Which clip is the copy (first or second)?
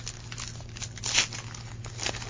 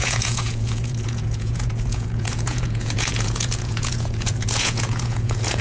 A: second